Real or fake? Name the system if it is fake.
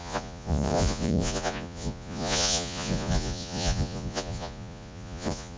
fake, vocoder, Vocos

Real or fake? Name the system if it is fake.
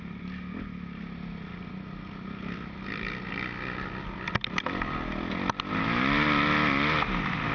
real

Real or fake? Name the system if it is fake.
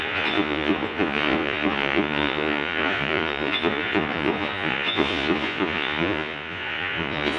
fake, vocoder, Vocos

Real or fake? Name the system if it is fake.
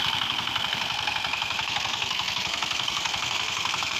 fake, codec, SNAC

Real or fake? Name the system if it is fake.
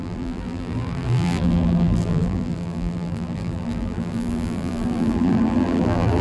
fake, vocoder, BigVGAN v2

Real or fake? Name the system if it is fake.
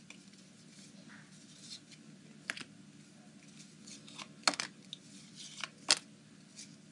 real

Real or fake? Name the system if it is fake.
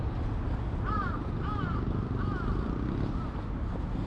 real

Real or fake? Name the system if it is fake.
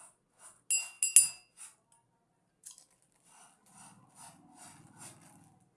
real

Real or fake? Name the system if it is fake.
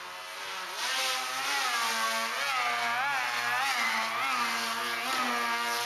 real